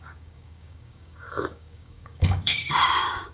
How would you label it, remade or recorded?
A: remade